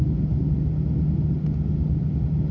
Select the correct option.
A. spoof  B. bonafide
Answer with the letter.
B